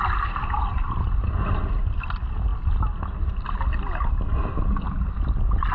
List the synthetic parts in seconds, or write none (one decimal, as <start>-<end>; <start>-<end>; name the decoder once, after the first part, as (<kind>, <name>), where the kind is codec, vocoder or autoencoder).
none